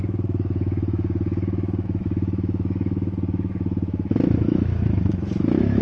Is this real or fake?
fake